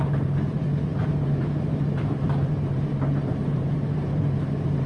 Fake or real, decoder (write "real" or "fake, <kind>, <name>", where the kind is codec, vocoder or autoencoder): fake, vocoder, BigVGAN v2